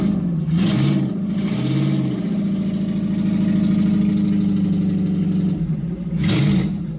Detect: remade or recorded recorded